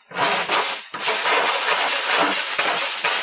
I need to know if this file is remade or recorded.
recorded